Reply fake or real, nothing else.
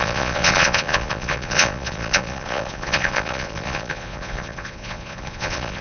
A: fake